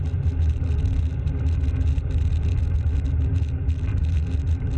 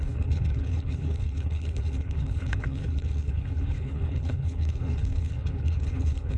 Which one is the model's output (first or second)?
second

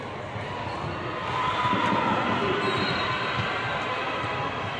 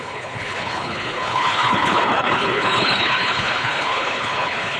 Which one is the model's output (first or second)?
second